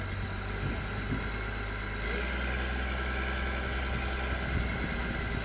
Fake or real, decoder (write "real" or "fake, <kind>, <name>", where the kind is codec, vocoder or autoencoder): real